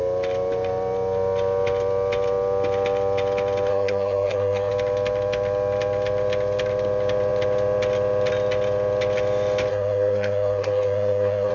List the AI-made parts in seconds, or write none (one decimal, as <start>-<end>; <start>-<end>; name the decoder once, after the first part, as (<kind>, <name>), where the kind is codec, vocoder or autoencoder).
3.7-4.7 (codec, SNAC); 9.7-11.5